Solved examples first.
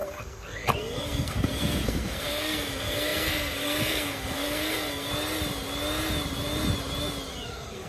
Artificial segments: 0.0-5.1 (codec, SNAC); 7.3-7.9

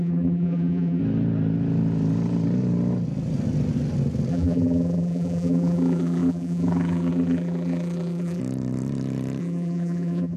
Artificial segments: 0.0-1.0 (vocoder, BigVGAN v2); 4.3-8.4; 9.4-10.4

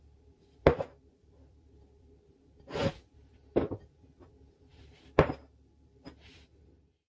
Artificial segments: 4.7-6.3 (vocoder, BigVGAN v2)